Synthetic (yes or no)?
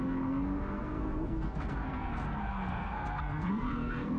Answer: yes